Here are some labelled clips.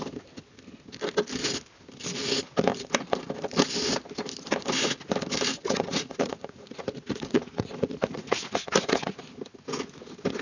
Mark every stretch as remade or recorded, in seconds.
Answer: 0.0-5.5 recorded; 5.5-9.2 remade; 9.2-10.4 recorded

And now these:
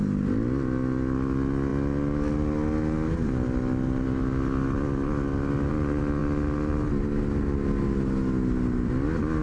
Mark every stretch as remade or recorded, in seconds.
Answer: 0.0-9.4 recorded

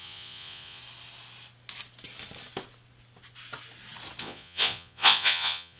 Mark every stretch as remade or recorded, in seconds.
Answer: 0.0-0.8 remade; 0.8-4.2 recorded; 4.2-5.8 remade

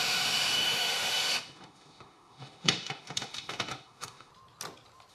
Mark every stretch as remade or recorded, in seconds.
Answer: 0.0-4.3 remade; 4.3-5.1 recorded

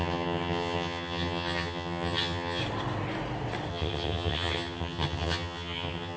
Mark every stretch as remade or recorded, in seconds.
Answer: 0.0-2.6 remade; 2.6-3.7 recorded; 3.7-6.2 remade

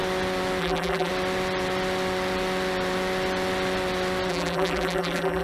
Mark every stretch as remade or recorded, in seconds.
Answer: 0.0-0.6 recorded; 0.6-1.1 remade; 1.1-4.3 recorded; 4.3-5.4 remade